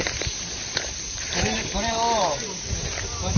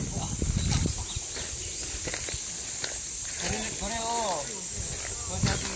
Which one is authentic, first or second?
second